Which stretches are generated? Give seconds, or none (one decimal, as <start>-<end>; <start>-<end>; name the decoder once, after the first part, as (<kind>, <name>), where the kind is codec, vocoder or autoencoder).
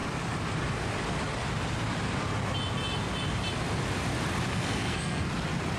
4.5-5.3 (codec, SNAC)